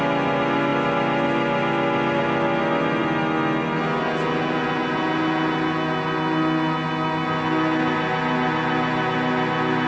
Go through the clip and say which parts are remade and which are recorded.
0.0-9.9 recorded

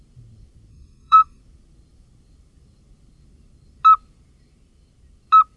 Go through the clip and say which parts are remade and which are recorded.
0.0-0.7 recorded; 0.7-1.4 remade; 1.4-5.6 recorded

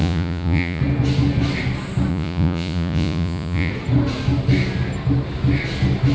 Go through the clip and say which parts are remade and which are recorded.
0.0-0.8 remade; 0.8-2.1 recorded; 2.1-3.7 remade; 3.7-6.1 recorded

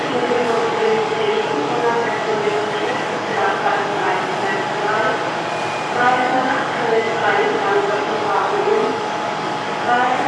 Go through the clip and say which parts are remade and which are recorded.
0.0-4.1 remade; 4.1-6.0 recorded; 6.0-7.2 remade; 7.2-7.9 recorded; 7.9-10.3 remade

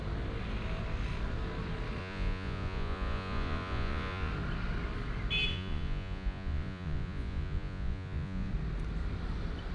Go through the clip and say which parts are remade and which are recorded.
0.0-2.0 recorded; 2.0-4.3 remade; 4.3-5.5 recorded; 5.5-8.5 remade; 8.5-9.7 recorded

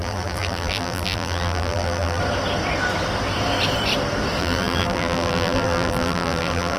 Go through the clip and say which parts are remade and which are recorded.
0.0-2.2 remade; 2.2-4.4 recorded; 4.4-6.8 remade

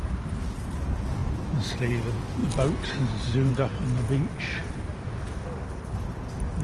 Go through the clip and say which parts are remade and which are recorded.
0.0-6.6 recorded